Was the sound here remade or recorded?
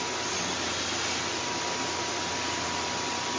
recorded